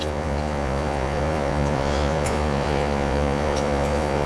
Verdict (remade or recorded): remade